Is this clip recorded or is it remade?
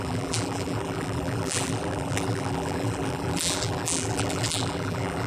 remade